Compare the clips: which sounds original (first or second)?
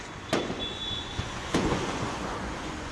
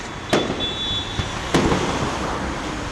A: second